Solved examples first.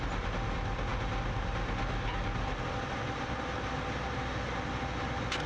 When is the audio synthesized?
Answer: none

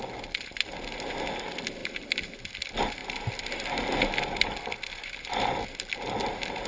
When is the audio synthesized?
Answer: none